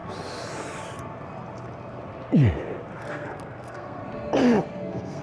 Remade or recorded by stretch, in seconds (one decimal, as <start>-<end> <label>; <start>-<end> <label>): 0.0-3.1 recorded; 3.1-4.0 remade; 4.0-4.7 recorded; 4.7-5.2 remade